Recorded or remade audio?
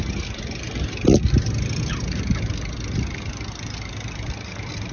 recorded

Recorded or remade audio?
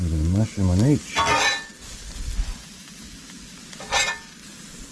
recorded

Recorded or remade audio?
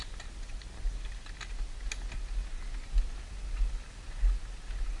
recorded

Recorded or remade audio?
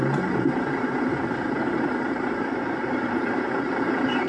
remade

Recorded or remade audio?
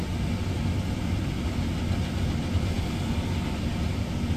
recorded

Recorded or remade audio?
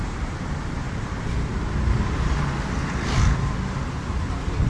recorded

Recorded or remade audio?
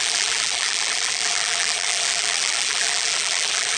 remade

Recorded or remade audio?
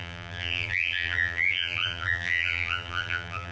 remade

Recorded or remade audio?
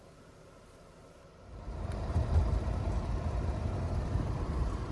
remade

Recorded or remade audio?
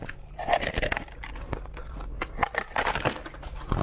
recorded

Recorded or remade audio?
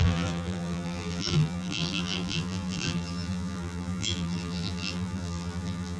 remade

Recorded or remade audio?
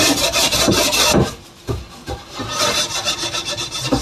remade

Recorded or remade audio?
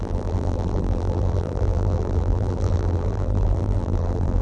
remade